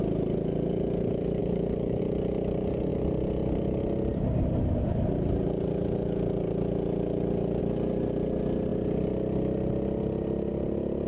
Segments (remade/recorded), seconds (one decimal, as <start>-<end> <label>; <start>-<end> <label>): 0.0-1.4 recorded; 1.4-2.0 remade; 2.0-11.1 recorded